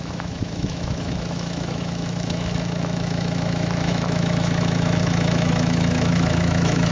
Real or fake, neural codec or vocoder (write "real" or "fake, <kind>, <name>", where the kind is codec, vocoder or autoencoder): fake, autoencoder, DAC-VAE